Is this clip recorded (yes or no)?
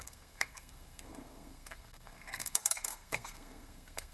no